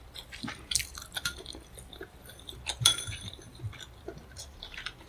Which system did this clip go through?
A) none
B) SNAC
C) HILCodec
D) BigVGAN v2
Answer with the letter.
D